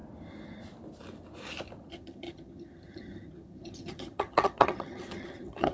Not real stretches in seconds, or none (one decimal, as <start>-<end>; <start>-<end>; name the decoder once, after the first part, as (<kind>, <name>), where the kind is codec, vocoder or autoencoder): 1.9-5.7 (vocoder, HiFi-GAN)